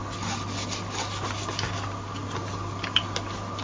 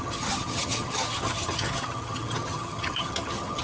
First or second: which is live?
first